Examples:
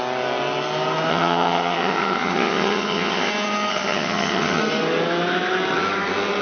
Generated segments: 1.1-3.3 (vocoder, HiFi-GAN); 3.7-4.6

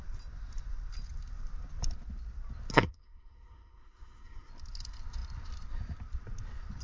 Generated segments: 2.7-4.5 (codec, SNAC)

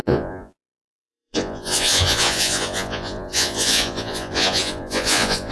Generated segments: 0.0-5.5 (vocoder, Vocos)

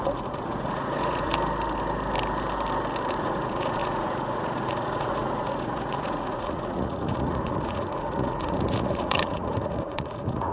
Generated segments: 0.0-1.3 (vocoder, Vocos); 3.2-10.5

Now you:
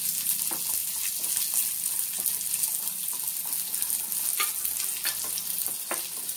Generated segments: none